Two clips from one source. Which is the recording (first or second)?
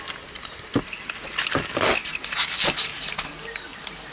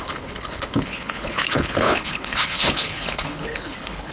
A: first